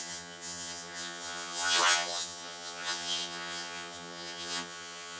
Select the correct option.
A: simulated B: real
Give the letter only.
A